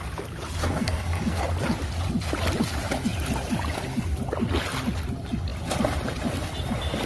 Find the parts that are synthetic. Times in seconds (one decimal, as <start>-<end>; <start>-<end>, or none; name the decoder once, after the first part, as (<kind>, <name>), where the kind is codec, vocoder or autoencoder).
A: 0.6-1.4 (codec, SNAC)